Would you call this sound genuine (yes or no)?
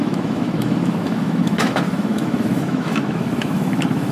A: no